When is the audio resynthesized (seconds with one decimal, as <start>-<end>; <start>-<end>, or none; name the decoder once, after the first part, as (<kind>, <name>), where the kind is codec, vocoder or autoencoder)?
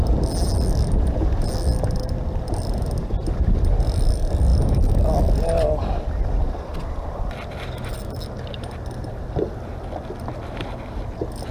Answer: none